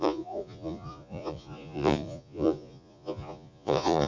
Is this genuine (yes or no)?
no